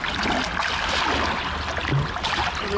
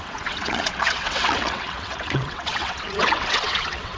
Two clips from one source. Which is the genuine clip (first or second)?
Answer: first